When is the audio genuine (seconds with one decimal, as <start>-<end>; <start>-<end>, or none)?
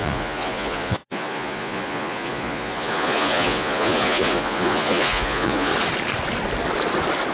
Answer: 5.7-7.3